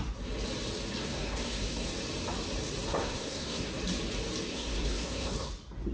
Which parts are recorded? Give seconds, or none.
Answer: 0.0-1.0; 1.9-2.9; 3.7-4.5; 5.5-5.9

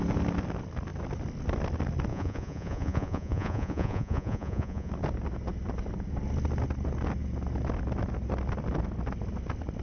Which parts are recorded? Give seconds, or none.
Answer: 0.0-2.1; 4.9-9.8

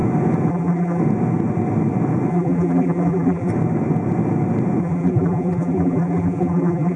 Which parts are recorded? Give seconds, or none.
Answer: 0.0-0.5; 1.0-2.3; 3.5-4.8